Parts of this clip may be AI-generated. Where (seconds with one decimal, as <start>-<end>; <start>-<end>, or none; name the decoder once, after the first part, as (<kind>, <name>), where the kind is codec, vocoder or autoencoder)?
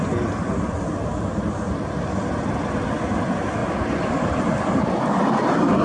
0.0-3.6 (vocoder, BigVGAN v2); 4.4-5.8